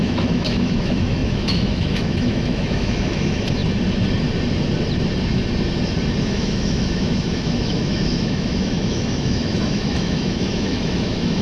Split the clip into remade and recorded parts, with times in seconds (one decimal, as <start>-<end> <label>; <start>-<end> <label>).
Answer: 0.0-3.6 remade; 3.6-6.2 recorded; 6.2-11.4 remade